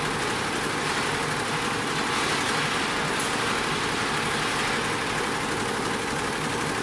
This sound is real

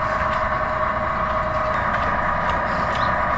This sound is real